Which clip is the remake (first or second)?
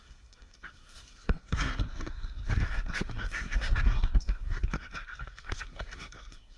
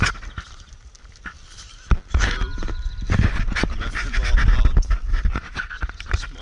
first